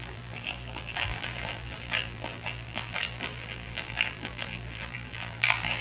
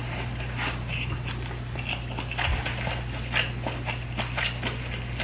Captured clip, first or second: second